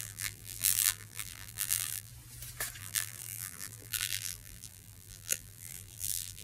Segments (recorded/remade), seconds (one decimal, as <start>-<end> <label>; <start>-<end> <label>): 0.0-2.1 remade; 2.1-2.8 recorded; 2.8-6.4 remade